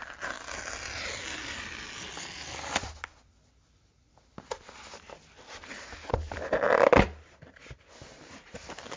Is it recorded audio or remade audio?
recorded